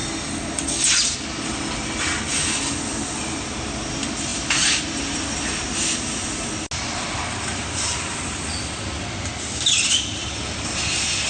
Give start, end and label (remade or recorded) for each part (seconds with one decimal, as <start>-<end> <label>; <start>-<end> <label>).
0.0-11.3 recorded